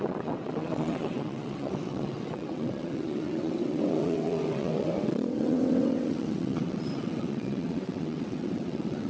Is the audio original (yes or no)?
no